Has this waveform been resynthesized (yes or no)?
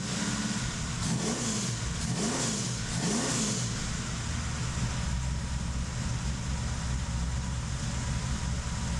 no